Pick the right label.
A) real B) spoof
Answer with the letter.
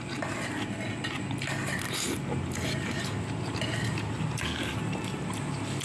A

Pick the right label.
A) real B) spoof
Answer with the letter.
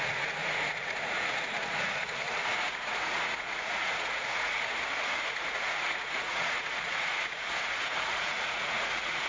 B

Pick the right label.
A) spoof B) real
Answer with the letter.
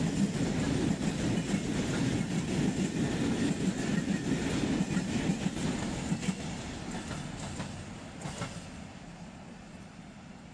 B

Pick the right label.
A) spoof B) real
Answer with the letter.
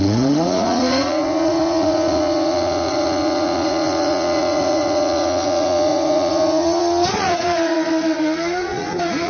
A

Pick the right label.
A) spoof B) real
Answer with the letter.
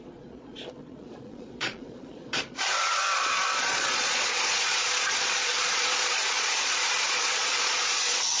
A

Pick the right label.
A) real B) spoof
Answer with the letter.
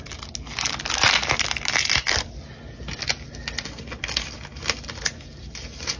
A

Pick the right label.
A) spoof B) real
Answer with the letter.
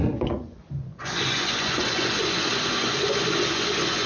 A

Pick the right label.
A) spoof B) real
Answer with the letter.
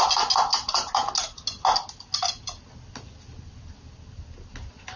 B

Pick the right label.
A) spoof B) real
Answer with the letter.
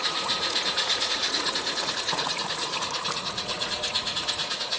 A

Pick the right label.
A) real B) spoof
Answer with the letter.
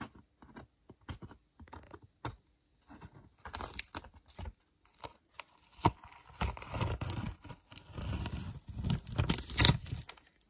A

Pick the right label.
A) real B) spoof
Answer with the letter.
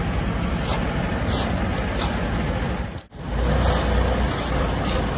A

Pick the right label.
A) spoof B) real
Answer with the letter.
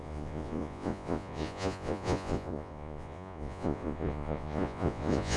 A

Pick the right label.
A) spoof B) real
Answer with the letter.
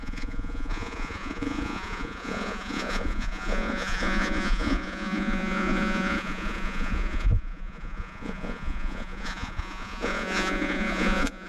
A